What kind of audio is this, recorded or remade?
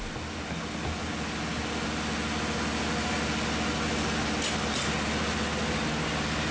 recorded